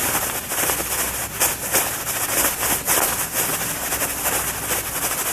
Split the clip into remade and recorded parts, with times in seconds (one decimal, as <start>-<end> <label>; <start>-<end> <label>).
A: 0.0-5.3 recorded